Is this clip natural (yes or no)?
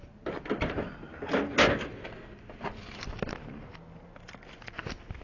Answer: yes